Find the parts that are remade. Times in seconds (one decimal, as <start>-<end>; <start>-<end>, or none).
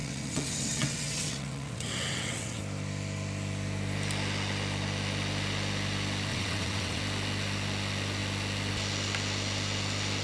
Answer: 0.0-2.6; 6.3-7.0